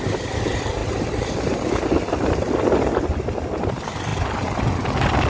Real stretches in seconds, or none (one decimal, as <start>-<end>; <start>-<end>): 0.0-5.3